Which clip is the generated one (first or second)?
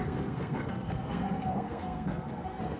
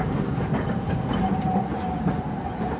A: first